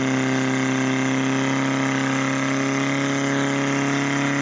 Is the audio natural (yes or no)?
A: yes